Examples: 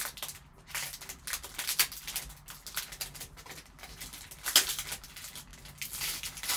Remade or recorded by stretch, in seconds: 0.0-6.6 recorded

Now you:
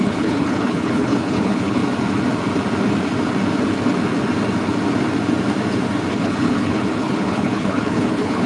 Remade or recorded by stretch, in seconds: 0.0-1.8 remade; 1.8-6.1 recorded; 6.1-8.5 remade

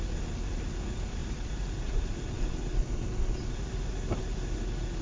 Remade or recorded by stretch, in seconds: 0.0-1.2 recorded; 1.2-4.2 remade; 4.2-5.0 recorded

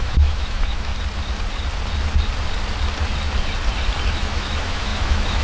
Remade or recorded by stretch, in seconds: 0.0-0.9 remade; 0.9-4.1 recorded; 4.1-5.4 remade

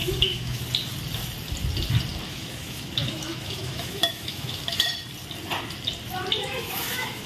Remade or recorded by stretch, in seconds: 0.0-0.6 remade; 0.6-2.3 recorded; 2.3-4.9 remade; 4.9-6.4 recorded; 6.4-7.3 remade